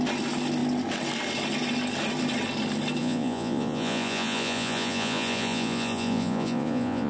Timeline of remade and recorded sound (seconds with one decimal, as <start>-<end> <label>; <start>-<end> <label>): 0.0-3.0 recorded; 3.0-7.1 remade